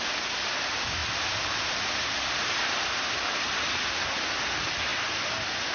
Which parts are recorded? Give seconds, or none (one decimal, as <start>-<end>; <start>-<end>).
0.0-5.7